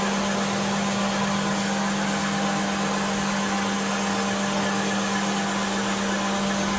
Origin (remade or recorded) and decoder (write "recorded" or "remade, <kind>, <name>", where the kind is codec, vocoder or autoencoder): recorded